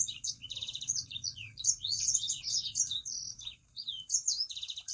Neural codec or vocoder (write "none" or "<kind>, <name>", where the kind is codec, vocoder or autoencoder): vocoder, Vocos